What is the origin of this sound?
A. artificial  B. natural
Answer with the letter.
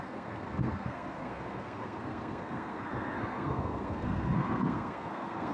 A